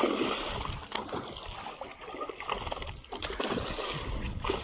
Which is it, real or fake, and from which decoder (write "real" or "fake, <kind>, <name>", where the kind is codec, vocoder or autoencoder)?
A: real